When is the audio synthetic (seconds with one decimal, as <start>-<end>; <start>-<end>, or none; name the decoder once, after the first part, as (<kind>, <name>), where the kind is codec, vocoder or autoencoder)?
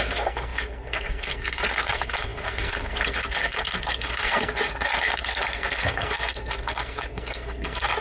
0.0-8.0 (codec, SNAC)